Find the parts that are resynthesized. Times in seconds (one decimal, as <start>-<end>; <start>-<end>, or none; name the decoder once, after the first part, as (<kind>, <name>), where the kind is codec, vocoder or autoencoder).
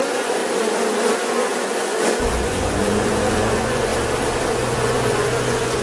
0.0-0.4 (vocoder, Vocos); 1.1-3.9; 4.5-5.8